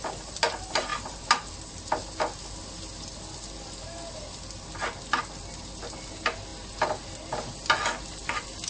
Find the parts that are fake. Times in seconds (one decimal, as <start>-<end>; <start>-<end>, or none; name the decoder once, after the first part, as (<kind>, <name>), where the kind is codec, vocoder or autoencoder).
none